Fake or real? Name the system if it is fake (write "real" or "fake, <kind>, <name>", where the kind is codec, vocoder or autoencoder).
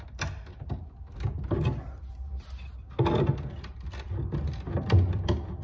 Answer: real